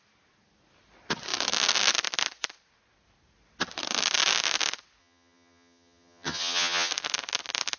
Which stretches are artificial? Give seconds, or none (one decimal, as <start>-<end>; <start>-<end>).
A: 5.0-6.9